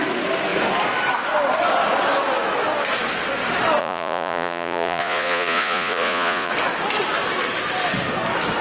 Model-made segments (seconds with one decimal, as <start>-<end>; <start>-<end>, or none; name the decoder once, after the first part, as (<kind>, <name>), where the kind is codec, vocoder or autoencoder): 3.8-6.5 (vocoder, Vocos)